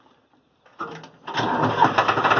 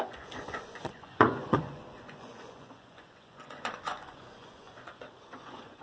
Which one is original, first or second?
first